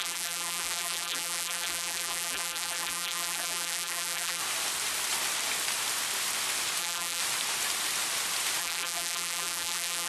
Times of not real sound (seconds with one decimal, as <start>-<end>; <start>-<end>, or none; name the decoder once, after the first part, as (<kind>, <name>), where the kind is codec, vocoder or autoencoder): 0.0-4.4 (vocoder, BigVGAN v2); 6.8-7.2; 8.6-10.1